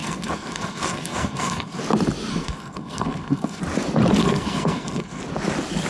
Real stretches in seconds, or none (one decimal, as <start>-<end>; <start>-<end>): 1.8-2.3; 3.6-4.2; 5.2-5.9